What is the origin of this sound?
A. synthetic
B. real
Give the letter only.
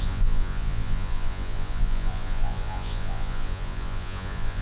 A